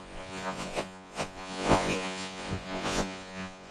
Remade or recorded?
remade